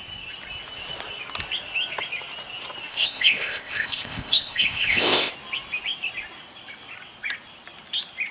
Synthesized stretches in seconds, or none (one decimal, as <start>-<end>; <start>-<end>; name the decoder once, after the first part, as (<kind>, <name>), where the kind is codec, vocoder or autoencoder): 2.9-5.3 (codec, ZipCodec)